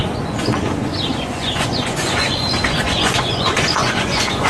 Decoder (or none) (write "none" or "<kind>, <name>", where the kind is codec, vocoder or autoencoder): vocoder, Vocos